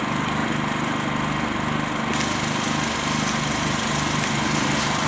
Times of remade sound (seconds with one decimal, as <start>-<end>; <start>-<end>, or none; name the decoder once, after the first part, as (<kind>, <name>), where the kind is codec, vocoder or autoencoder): 0.0-0.4 (vocoder, BigVGAN v2); 3.5-5.1

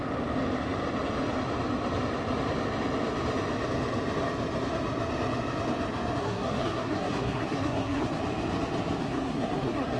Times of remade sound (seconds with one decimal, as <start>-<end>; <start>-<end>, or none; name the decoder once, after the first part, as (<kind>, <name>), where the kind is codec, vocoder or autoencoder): 6.2-8.2 (codec, SNAC); 9.0-10.0

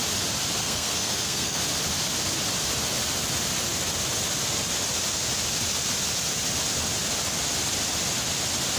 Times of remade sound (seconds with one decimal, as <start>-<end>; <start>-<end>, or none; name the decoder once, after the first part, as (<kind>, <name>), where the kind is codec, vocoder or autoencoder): 0.6-1.6 (codec, SNAC)

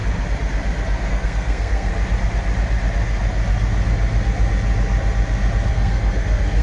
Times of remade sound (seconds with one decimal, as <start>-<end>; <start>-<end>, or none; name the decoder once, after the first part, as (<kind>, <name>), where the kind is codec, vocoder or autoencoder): 1.1-1.9 (codec, SNAC); 5.7-6.6

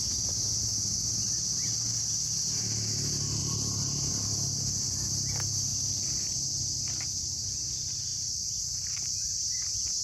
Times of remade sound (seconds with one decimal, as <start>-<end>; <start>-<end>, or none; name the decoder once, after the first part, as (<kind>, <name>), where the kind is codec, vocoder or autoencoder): 0.7-2.0 (vocoder, BigVGAN v2); 3.4-4.1; 8.1-9.3